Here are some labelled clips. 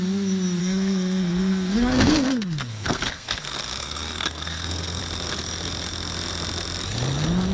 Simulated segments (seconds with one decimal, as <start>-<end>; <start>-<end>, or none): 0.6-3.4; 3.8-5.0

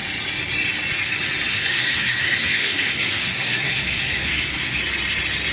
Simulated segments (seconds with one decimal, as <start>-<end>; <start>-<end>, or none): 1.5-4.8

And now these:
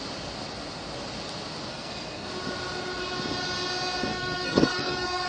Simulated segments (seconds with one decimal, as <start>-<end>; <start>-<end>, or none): 1.7-2.3; 4.1-5.3

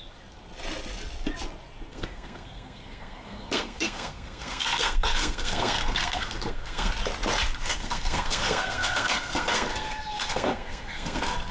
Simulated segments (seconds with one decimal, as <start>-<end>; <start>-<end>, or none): 1.9-6.9; 7.6-11.5

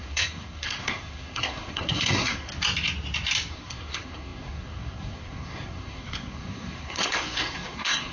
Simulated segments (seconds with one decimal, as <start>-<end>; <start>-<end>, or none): 0.0-2.5; 3.5-8.1

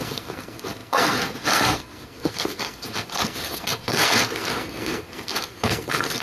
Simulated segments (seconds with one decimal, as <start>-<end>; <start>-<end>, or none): 0.0-6.2

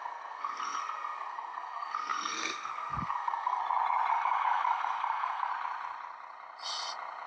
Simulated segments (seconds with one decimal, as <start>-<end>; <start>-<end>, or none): 0.0-3.6; 4.1-5.5

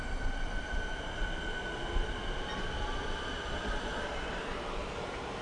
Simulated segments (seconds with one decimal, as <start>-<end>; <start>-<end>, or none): none